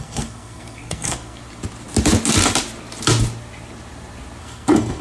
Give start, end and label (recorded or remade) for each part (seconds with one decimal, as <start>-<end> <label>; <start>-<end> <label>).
0.0-1.4 remade; 1.4-4.4 recorded; 4.4-5.0 remade